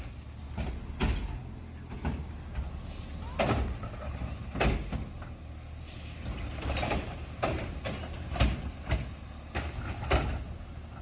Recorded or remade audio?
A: recorded